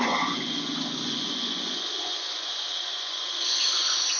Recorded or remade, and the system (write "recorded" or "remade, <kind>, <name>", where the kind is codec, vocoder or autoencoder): remade, vocoder, Vocos